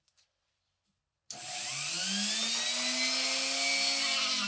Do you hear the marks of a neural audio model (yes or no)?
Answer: no